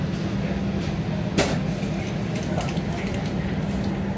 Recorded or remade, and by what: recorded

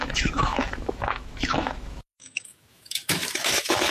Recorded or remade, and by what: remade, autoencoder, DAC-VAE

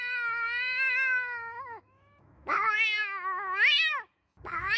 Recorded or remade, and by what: remade, autoencoder, DAC-VAE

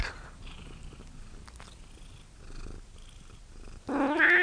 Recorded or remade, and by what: recorded